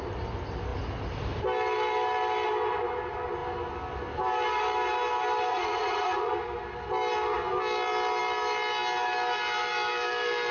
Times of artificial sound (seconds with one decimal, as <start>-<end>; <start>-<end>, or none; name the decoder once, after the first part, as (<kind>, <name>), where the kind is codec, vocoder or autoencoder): 5.5-6.3 (vocoder, Vocos)